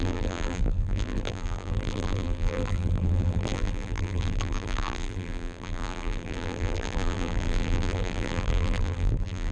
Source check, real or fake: fake